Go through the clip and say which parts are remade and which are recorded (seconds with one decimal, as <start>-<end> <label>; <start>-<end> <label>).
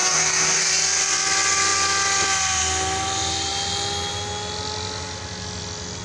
0.0-0.7 remade; 0.7-6.0 recorded